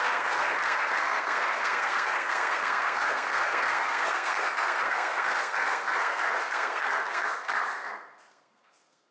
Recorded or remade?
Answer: remade